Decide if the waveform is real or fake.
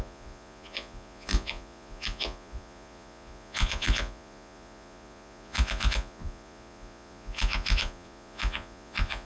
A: fake